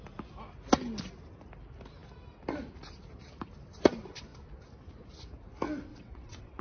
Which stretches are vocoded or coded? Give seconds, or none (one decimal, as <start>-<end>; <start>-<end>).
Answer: 5.9-6.6